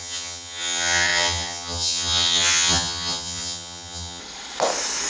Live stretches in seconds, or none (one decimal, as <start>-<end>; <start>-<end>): 4.2-5.1

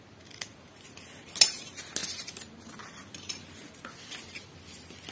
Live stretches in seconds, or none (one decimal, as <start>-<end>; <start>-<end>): 0.0-5.1

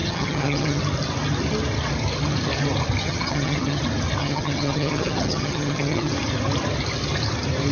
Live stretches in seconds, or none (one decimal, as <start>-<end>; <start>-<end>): 0.8-3.0; 3.8-4.2; 6.1-7.7

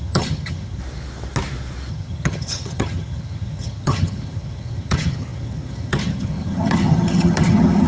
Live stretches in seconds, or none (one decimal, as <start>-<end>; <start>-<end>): 0.8-1.9

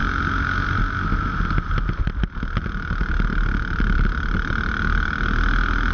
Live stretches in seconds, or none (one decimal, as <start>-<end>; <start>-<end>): 0.0-5.9

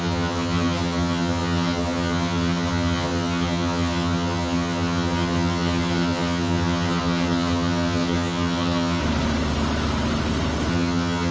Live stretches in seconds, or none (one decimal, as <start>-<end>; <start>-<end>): 9.0-10.7

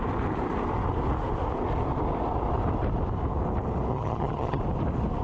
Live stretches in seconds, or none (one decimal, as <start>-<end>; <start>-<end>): 0.0-3.9; 4.6-5.2